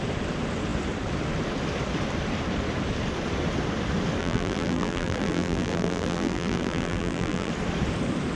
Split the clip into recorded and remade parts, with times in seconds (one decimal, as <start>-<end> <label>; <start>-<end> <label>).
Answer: 0.0-4.2 recorded; 4.2-7.5 remade; 7.5-8.4 recorded